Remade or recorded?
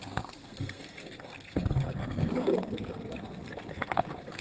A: remade